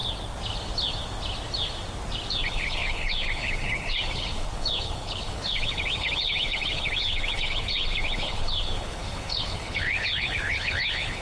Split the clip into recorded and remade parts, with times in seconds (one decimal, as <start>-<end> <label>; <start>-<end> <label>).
0.0-2.3 recorded; 2.3-11.2 remade